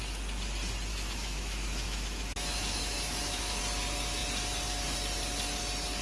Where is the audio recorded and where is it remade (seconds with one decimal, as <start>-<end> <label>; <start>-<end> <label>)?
0.0-0.9 recorded; 0.9-3.6 remade; 3.6-6.0 recorded